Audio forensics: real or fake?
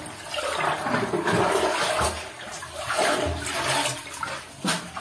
real